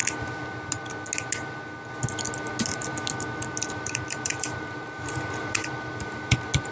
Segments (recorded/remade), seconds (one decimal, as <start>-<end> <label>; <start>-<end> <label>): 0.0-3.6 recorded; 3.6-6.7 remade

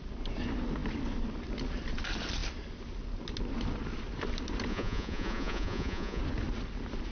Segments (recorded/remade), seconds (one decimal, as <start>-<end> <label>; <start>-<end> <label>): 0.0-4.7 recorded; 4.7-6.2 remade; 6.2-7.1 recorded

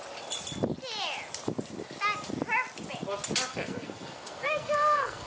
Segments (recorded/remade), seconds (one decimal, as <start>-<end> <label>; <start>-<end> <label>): 0.0-3.5 recorded; 3.5-5.3 remade

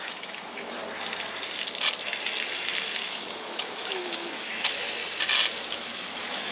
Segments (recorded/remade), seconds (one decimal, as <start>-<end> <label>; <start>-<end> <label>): 0.0-0.8 remade; 0.8-2.9 recorded; 2.9-5.0 remade; 5.0-5.6 recorded; 5.6-6.5 remade

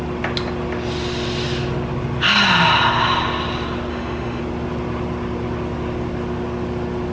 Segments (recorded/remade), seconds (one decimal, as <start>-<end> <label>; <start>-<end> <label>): 0.0-3.9 recorded; 3.9-4.4 remade; 4.4-7.1 recorded

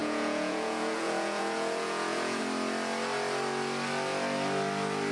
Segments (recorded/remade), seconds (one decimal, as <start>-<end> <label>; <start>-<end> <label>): 0.0-2.4 remade; 2.4-5.1 recorded

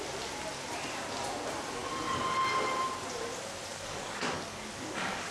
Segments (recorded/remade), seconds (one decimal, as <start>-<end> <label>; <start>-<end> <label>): 0.0-3.7 recorded; 3.7-5.3 remade

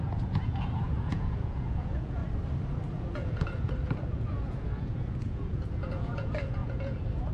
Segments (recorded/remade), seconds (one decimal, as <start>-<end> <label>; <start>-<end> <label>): 0.0-2.2 remade; 2.2-2.9 recorded; 2.9-7.3 remade